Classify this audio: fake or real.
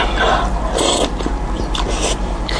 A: real